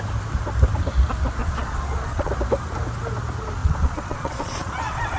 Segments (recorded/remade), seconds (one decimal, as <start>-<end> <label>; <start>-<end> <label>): 0.0-1.4 recorded; 1.4-2.3 remade; 2.3-3.6 recorded; 3.6-5.2 remade